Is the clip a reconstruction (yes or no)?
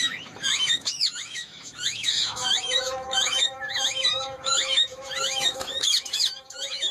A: yes